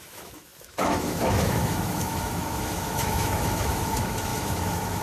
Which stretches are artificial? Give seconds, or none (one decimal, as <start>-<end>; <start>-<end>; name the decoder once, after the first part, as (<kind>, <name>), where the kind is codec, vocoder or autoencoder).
0.0-5.0 (autoencoder, DAC-VAE)